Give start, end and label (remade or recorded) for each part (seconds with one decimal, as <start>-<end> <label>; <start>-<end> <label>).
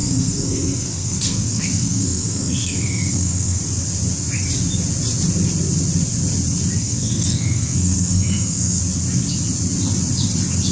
0.0-3.6 remade; 3.6-6.8 recorded; 6.8-8.8 remade; 8.8-10.7 recorded